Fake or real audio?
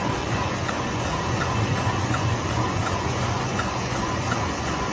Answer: fake